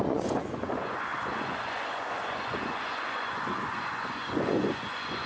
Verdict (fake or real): fake